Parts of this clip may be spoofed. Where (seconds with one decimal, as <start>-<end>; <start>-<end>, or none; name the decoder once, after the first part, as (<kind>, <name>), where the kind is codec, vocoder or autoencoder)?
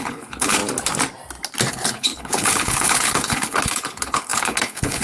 0.0-0.6 (codec, HILCodec); 1.7-5.0